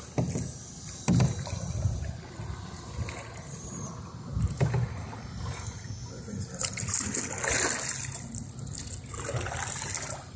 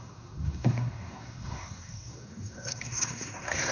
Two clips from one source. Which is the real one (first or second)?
first